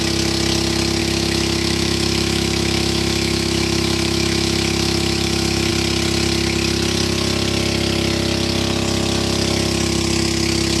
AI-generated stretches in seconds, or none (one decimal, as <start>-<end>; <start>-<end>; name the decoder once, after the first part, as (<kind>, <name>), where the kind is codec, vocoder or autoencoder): 1.0-5.7 (autoencoder, DAC-VAE)

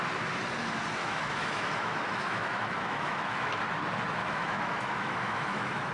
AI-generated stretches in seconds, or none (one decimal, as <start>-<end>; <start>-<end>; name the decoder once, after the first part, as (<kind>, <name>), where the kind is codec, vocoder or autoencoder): 1.0-3.6 (autoencoder, DAC-VAE); 4.2-5.9

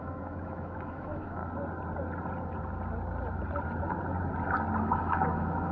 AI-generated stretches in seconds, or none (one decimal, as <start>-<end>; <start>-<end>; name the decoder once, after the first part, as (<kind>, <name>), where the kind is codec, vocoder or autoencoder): 0.0-1.4 (autoencoder, DAC-VAE); 4.8-5.7

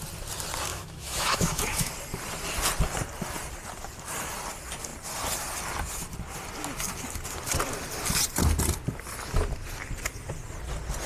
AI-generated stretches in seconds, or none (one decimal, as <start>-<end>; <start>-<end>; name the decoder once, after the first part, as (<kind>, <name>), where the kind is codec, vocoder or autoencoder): 0.7-1.9 (autoencoder, DAC-VAE)

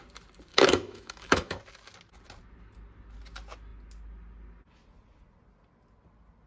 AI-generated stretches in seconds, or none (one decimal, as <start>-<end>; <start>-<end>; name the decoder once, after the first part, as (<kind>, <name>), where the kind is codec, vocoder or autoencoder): 0.5-1.6 (autoencoder, DAC-VAE)

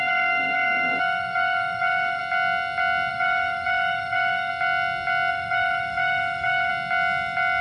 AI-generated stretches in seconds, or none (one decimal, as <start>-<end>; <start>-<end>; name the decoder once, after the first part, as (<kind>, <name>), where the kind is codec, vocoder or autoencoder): 0.0-2.2 (autoencoder, DAC-VAE); 3.1-4.5; 5.3-6.7

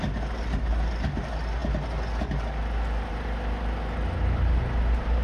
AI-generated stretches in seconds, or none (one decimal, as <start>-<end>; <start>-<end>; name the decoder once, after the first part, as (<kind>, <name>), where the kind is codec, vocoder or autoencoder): none